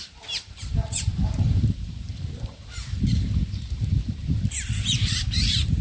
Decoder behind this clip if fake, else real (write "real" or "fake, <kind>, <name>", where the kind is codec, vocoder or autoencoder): fake, vocoder, BigVGAN v2